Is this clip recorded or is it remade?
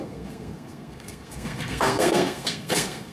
remade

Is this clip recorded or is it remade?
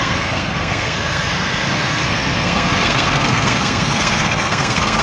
remade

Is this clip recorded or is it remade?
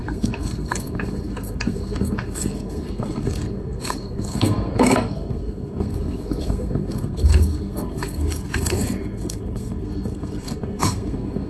remade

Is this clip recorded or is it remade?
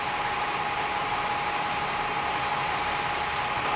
recorded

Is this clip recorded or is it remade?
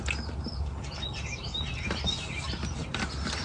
recorded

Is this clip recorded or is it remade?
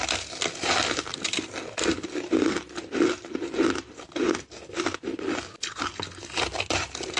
recorded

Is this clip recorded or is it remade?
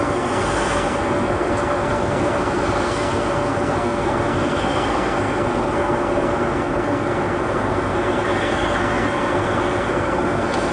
remade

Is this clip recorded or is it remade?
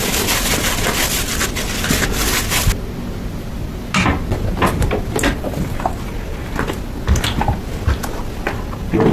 recorded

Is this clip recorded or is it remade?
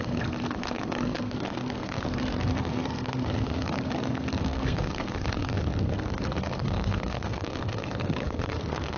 remade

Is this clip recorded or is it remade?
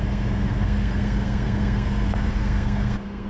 remade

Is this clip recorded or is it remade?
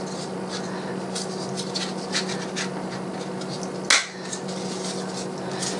recorded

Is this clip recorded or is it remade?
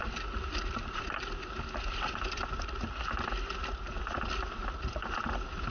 recorded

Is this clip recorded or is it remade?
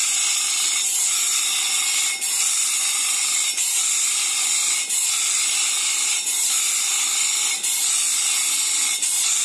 recorded